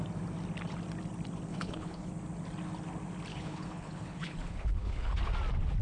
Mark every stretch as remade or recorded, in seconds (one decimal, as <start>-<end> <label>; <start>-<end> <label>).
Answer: 0.0-1.5 recorded; 1.5-2.1 remade; 2.1-3.3 recorded; 3.3-5.2 remade; 5.2-5.8 recorded